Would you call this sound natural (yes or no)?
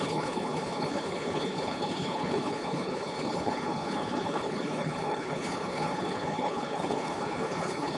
no